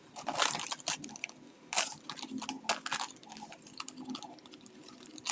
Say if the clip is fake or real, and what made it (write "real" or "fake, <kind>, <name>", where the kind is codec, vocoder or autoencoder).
real